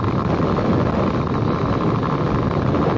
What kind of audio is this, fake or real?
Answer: real